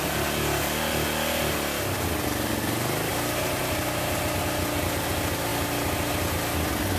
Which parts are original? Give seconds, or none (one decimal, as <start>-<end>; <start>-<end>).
0.0-3.1; 3.6-5.5; 6.1-7.0